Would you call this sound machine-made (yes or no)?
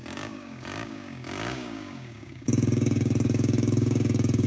yes